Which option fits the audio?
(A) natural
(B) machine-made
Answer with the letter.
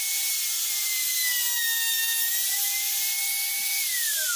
A